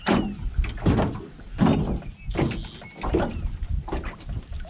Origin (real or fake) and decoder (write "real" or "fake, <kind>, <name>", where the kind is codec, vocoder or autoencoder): real